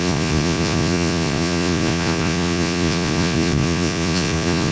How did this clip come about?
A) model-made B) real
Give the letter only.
A